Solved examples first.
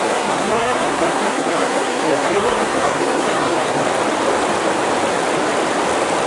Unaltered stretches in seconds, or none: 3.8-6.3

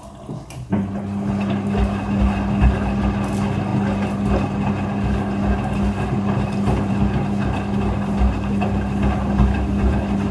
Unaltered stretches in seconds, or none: 0.0-10.3

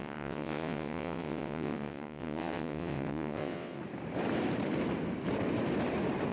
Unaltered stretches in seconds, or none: 3.8-6.3